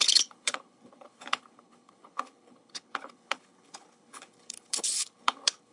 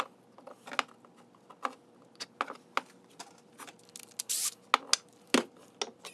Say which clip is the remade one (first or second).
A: first